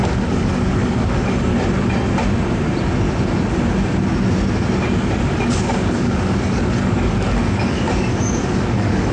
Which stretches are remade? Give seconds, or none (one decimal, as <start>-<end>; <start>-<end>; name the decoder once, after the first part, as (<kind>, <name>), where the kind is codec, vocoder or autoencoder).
0.0-1.5 (codec, DAC); 5.3-9.1